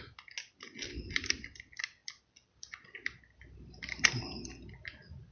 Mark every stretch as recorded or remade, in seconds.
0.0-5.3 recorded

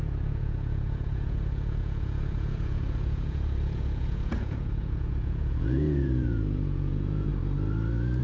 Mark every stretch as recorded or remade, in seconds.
0.0-7.3 remade; 7.3-8.2 recorded

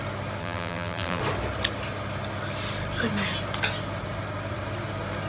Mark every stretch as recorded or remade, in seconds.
0.0-0.4 recorded; 0.4-1.2 remade; 1.2-5.3 recorded

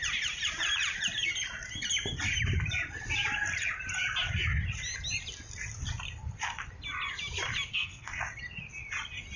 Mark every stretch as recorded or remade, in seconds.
0.0-7.7 recorded; 7.7-8.2 remade; 8.2-9.4 recorded